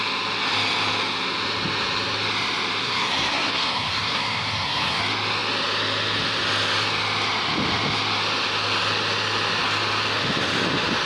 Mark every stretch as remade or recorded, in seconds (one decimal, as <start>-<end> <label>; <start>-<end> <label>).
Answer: 0.0-2.8 recorded; 2.8-5.0 remade; 5.0-11.1 recorded